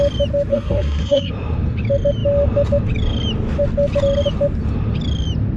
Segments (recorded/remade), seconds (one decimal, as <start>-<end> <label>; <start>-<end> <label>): 0.0-0.5 recorded; 0.5-1.3 remade; 1.3-5.6 recorded